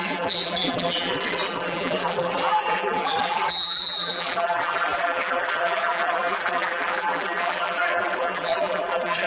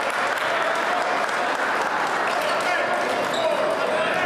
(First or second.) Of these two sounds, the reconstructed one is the first